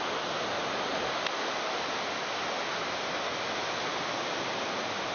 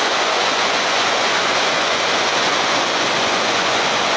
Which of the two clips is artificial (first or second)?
second